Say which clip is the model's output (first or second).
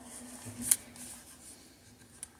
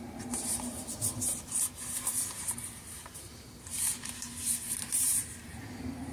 second